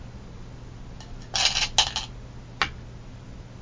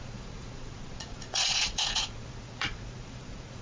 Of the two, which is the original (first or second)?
first